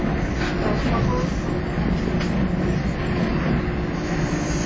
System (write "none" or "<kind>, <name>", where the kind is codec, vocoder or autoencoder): none